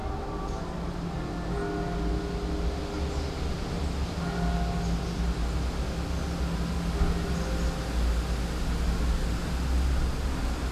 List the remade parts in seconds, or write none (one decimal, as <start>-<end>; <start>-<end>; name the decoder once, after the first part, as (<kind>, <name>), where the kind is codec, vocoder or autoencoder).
none